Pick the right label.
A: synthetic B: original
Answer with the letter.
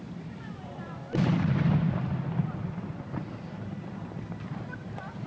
B